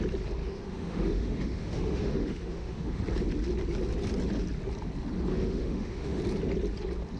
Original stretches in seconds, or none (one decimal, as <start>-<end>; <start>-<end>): 0.0-0.4; 3.0-5.3; 6.2-7.2